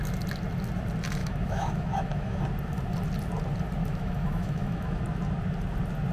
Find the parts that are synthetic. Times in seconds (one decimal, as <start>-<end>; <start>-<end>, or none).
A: 1.2-2.4; 3.8-5.0